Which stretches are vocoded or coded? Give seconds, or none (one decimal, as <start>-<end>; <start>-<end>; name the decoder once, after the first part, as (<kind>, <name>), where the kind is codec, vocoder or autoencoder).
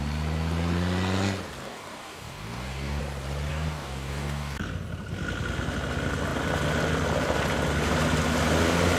1.6-3.0 (codec, DAC); 3.5-4.7